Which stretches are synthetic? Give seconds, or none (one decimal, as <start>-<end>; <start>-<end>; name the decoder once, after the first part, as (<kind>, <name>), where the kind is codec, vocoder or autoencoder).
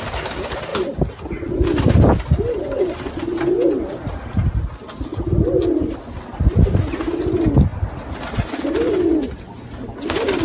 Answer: none